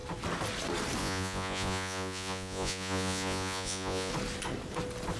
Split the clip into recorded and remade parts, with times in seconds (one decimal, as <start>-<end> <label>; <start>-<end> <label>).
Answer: 0.0-1.0 recorded; 1.0-4.1 remade; 4.1-5.2 recorded